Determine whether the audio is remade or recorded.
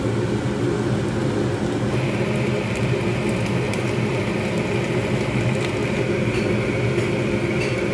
recorded